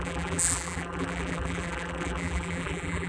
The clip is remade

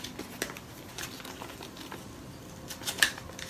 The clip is recorded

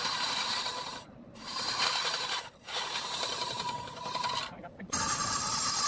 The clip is remade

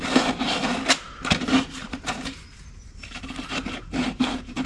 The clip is remade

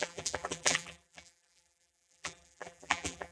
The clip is remade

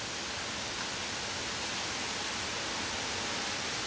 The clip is recorded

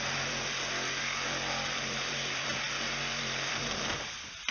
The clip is remade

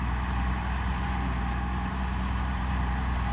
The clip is remade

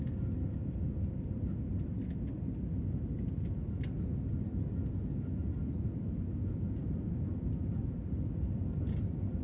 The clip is recorded